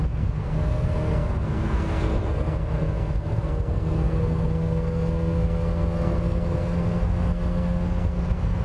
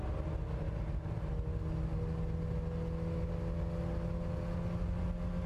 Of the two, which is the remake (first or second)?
first